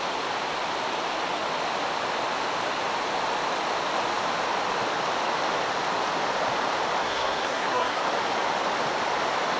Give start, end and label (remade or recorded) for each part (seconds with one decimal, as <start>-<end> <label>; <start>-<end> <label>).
0.0-7.0 recorded; 7.0-8.0 remade; 8.0-9.6 recorded